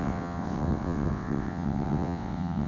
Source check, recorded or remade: remade